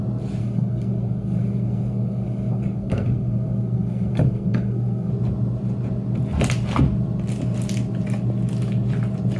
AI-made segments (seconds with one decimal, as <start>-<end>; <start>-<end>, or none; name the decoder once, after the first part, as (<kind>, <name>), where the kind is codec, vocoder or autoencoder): 0.4-5.1 (codec, SNAC)